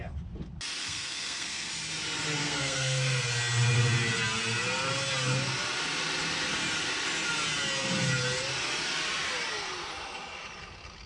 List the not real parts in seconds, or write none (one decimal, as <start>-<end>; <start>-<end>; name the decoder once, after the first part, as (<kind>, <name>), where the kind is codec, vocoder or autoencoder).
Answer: 0.8-1.7 (codec, SNAC); 2.4-3.2